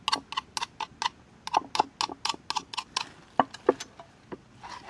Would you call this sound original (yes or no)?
yes